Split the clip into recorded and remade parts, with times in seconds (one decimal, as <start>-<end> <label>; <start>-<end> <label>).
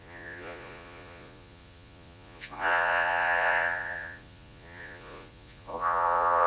0.0-6.5 remade